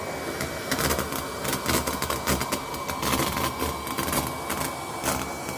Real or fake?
real